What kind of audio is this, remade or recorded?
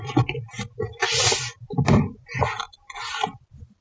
recorded